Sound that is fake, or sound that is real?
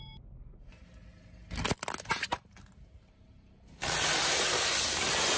real